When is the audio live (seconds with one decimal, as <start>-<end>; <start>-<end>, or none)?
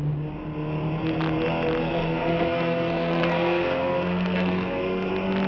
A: 0.0-1.8; 5.1-5.5